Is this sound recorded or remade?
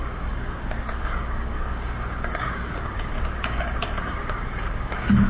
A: remade